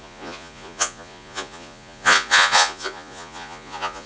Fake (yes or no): yes